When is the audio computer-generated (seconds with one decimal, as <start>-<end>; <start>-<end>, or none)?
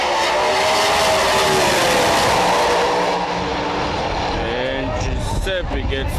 none